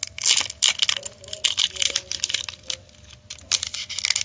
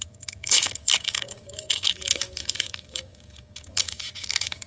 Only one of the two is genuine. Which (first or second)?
first